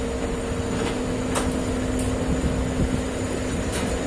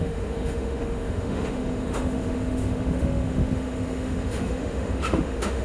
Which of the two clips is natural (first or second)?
first